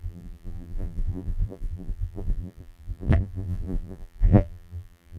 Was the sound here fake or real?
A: fake